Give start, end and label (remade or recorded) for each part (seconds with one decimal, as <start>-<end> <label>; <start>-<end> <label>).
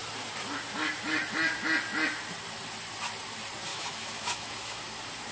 0.0-3.7 recorded; 3.7-4.8 remade; 4.8-5.3 recorded